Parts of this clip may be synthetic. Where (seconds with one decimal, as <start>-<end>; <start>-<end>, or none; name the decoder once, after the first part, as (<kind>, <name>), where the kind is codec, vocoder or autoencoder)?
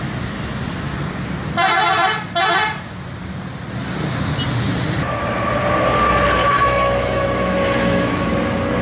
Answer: 6.4-8.3 (autoencoder, DAC-VAE)